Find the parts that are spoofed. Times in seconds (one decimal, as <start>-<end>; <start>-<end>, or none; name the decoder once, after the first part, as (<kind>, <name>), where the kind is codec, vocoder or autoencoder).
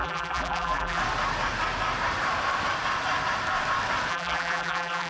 0.0-1.0 (vocoder, BigVGAN v2); 4.1-5.1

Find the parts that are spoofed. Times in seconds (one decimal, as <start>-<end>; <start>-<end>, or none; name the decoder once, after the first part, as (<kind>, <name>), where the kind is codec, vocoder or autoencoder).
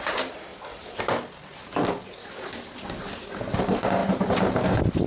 0.0-0.5 (vocoder, BigVGAN v2); 3.6-5.1